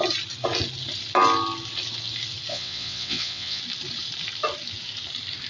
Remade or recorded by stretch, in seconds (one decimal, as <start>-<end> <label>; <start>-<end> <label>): 0.0-2.5 recorded; 2.5-3.6 remade; 3.6-5.5 recorded